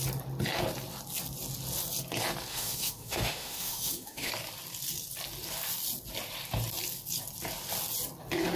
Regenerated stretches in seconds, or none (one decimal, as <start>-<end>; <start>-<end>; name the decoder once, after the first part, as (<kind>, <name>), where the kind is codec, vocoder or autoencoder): 2.5-4.3 (autoencoder, DAC-VAE)